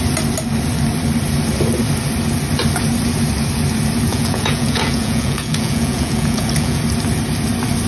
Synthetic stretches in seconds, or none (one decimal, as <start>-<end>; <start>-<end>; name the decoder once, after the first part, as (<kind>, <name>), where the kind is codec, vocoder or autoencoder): 4.1-6.8 (vocoder, Vocos)